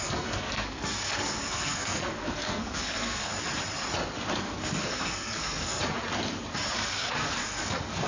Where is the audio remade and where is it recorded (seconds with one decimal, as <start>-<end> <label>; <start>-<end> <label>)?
0.0-3.3 remade; 3.3-4.4 recorded; 4.4-5.8 remade; 5.8-6.9 recorded; 6.9-8.1 remade